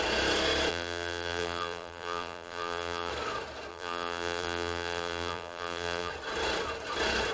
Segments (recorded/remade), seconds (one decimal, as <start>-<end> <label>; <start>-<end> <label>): 0.0-0.7 recorded; 0.7-3.1 remade; 3.1-3.7 recorded; 3.7-6.1 remade; 6.1-7.3 recorded